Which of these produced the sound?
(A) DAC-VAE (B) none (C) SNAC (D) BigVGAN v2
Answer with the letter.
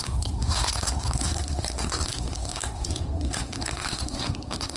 C